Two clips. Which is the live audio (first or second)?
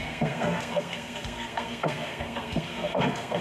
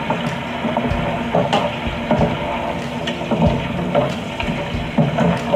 second